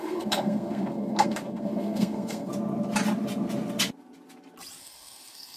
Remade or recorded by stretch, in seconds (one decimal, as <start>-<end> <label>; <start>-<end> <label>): 0.0-2.5 remade; 2.5-4.8 recorded; 4.8-5.6 remade